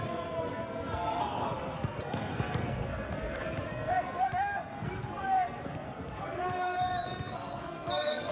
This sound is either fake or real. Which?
fake